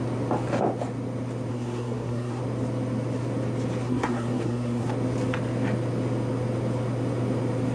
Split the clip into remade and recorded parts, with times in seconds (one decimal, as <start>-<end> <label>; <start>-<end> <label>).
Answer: 0.0-1.5 recorded; 1.5-2.4 remade; 2.4-3.8 recorded; 3.8-4.9 remade; 4.9-7.7 recorded